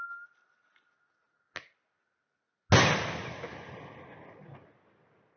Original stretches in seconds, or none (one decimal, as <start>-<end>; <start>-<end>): 0.0-5.4